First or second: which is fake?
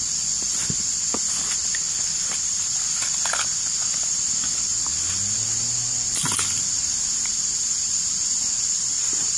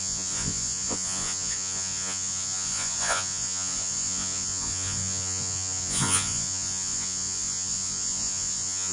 second